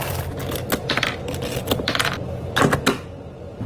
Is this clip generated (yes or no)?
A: no